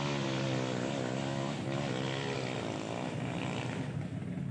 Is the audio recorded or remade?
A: recorded